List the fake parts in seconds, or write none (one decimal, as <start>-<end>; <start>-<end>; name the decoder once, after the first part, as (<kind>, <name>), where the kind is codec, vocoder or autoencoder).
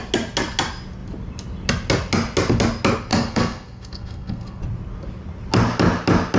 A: 3.1-4.6 (codec, SNAC)